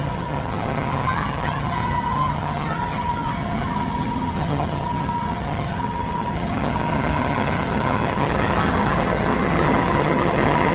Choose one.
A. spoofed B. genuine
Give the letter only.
A